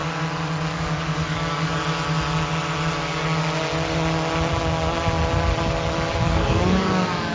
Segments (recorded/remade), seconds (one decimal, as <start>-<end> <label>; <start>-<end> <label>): 0.0-0.7 recorded; 0.7-1.8 remade; 1.8-6.1 recorded; 6.1-7.3 remade